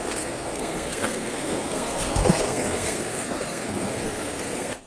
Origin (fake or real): fake